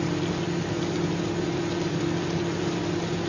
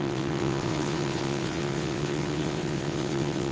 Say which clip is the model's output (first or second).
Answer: second